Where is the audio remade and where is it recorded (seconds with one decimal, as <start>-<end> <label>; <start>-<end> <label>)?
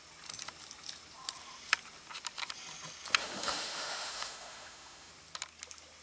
0.0-3.2 recorded; 3.2-5.1 remade; 5.1-6.0 recorded